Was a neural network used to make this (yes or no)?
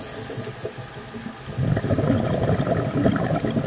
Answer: no